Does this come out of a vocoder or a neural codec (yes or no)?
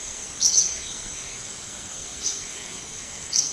yes